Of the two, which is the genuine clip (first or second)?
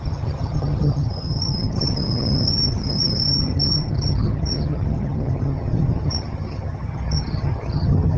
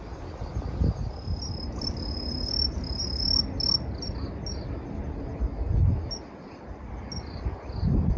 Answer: second